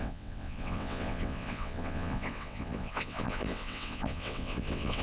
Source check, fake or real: fake